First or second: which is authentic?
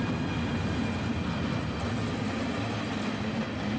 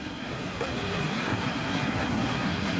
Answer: first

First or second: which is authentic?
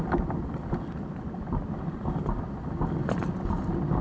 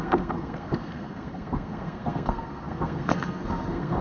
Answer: first